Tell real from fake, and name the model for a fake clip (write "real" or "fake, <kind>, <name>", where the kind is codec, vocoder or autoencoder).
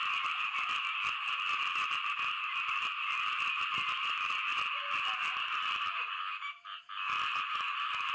fake, vocoder, BigVGAN v2